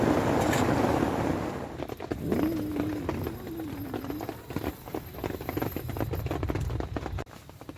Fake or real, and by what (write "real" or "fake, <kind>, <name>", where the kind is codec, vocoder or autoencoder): real